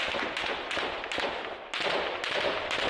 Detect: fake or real real